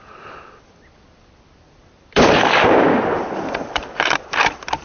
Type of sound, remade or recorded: remade